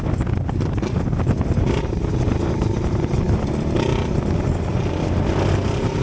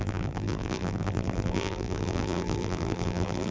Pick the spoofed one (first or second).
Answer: second